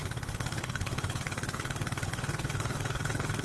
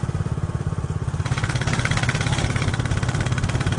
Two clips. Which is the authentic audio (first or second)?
second